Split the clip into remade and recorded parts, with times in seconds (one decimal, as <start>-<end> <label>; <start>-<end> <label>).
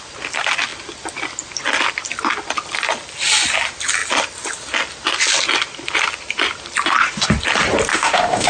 0.0-7.9 recorded; 7.9-8.5 remade